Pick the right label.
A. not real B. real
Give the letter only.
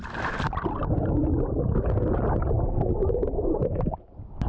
B